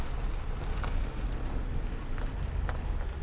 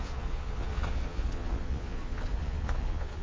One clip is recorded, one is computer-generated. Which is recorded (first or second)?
first